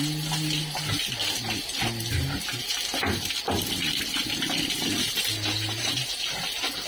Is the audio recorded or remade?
recorded